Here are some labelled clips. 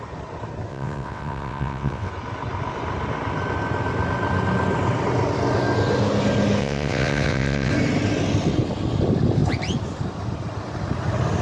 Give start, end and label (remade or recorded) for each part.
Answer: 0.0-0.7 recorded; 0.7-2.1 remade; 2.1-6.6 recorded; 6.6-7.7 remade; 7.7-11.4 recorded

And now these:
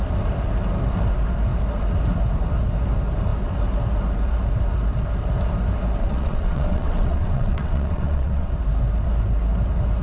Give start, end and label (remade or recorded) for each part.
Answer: 0.0-6.0 recorded; 6.0-8.5 remade; 8.5-10.0 recorded

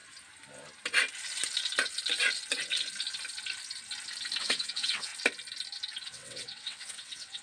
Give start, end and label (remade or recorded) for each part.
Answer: 0.0-4.4 recorded; 4.4-5.1 remade; 5.1-6.0 recorded; 6.0-7.4 remade